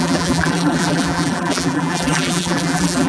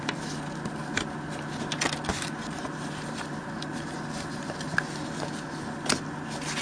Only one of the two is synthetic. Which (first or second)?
first